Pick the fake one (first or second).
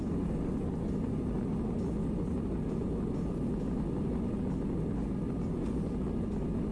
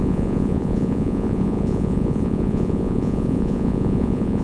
second